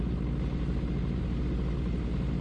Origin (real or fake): real